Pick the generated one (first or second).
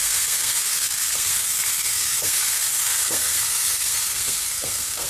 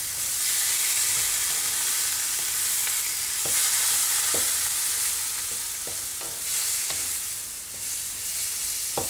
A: first